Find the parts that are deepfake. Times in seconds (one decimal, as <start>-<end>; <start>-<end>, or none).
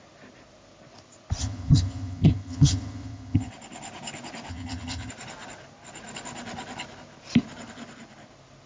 1.4-3.5; 4.5-5.1